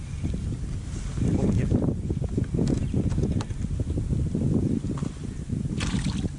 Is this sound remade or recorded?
recorded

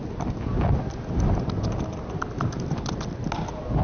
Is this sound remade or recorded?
recorded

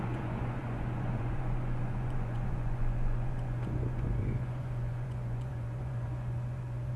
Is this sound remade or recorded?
remade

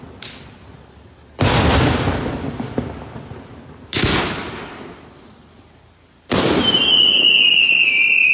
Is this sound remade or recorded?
recorded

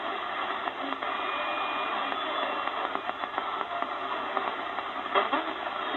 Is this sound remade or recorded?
recorded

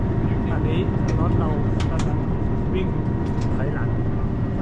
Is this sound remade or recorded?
recorded